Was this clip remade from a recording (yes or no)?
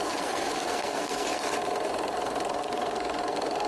yes